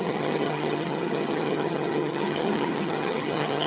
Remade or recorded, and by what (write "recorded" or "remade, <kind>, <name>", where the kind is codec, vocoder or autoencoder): remade, vocoder, HiFi-GAN